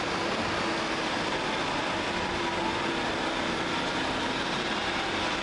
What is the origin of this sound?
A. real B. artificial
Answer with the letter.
A